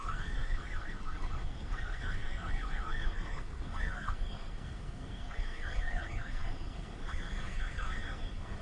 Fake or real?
fake